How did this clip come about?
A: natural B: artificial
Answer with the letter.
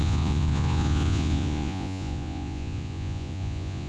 B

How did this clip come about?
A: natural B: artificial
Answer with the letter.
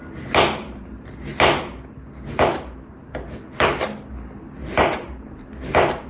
A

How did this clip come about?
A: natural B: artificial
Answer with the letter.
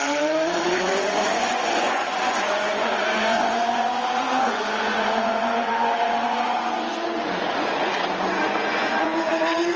B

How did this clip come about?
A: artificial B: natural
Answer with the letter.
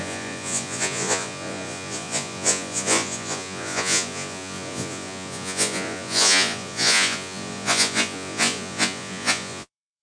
A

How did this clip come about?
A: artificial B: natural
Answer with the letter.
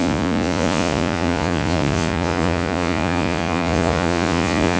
A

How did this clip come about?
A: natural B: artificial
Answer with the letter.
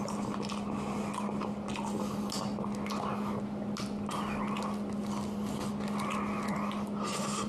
A